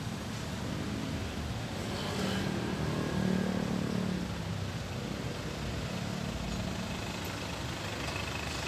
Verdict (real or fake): real